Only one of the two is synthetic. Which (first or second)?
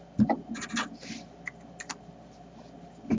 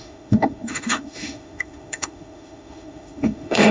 second